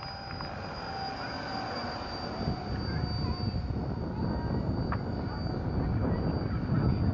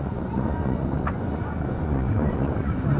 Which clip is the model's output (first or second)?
second